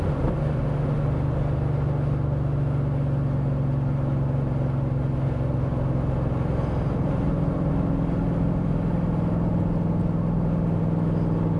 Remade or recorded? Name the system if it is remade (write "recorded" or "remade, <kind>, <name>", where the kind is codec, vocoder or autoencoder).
recorded